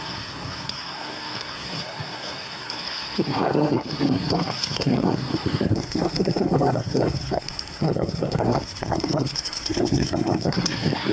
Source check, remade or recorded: remade